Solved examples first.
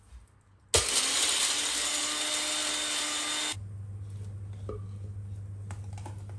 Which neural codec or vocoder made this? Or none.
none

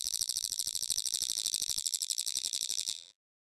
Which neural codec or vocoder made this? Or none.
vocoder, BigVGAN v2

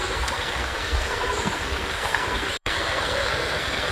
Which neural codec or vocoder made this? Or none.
codec, SNAC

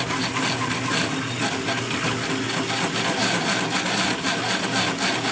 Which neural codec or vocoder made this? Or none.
none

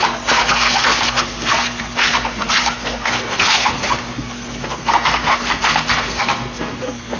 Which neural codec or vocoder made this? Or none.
codec, SNAC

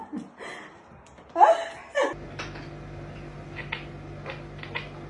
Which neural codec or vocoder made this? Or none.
none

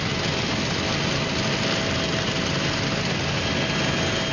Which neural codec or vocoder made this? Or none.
none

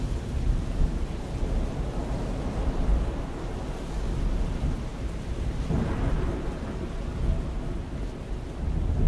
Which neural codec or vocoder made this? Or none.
none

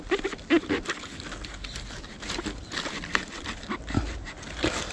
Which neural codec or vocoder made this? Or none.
none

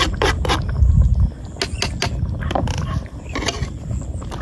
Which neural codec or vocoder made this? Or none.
none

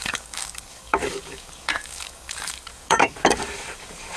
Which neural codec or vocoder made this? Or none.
codec, DAC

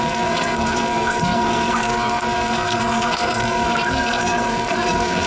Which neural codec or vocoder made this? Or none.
codec, SNAC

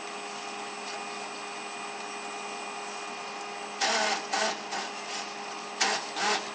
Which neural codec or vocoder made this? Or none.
none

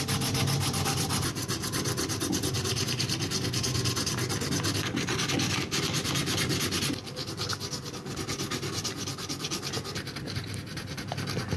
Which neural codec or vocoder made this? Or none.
none